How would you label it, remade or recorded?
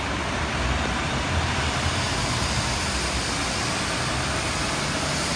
recorded